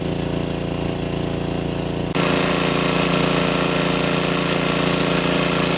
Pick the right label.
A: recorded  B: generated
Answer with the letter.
A